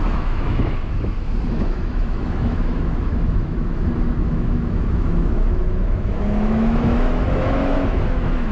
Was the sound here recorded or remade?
remade